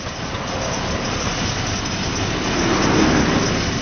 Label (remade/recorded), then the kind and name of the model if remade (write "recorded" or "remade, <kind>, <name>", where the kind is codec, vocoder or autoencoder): recorded